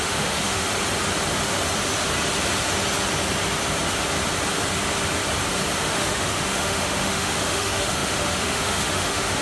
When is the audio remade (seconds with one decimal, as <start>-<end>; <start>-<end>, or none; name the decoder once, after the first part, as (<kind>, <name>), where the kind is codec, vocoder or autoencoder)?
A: 0.0-0.7 (autoencoder, DAC-VAE); 5.8-9.4